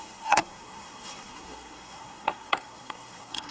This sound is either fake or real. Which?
fake